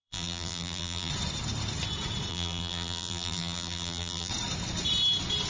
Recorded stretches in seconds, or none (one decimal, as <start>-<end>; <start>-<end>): 1.1-2.3; 4.3-5.5